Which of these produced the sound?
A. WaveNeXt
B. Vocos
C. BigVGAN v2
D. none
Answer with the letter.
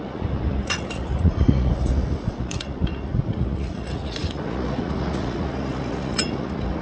B